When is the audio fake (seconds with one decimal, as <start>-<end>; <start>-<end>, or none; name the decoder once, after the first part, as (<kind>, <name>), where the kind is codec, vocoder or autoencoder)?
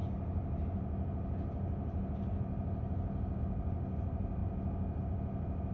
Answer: none